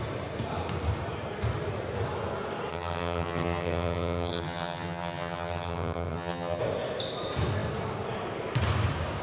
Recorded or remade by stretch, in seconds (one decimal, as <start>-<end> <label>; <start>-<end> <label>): 0.0-2.7 recorded; 2.7-6.6 remade; 6.6-9.2 recorded

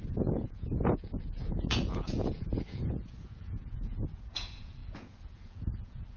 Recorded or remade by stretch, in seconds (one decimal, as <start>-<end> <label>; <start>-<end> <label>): 0.0-6.2 remade

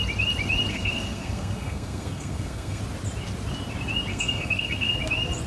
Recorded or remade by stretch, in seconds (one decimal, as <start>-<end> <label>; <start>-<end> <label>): 0.0-0.7 recorded; 0.7-2.8 remade; 2.8-4.1 recorded; 4.1-5.0 remade; 5.0-5.5 recorded

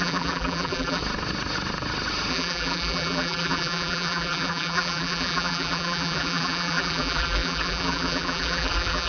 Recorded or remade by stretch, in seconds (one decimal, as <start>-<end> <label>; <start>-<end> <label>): 0.0-1.0 remade; 1.0-2.3 recorded; 2.3-9.1 remade

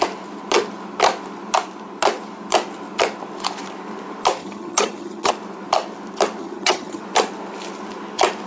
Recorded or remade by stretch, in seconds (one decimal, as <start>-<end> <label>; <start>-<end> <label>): 0.0-4.4 recorded; 4.4-5.3 remade; 5.3-6.4 recorded; 6.4-7.0 remade; 7.0-8.5 recorded